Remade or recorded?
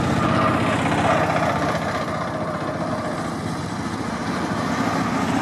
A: recorded